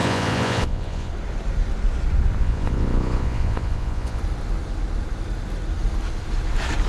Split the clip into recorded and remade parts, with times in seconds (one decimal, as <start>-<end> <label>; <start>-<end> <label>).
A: 0.0-1.1 remade; 1.1-2.4 recorded; 2.4-4.2 remade; 4.2-6.9 recorded